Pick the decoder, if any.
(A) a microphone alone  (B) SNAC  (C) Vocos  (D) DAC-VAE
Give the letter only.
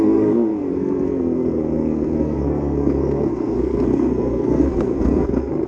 B